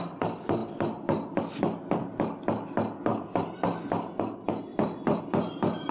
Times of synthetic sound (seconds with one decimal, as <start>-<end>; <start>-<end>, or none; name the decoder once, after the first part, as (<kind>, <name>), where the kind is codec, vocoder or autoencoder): 0.6-1.4 (vocoder, BigVGAN v2); 3.1-3.8; 4.7-5.2